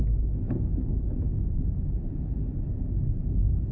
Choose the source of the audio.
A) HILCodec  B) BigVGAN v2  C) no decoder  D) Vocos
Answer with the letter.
C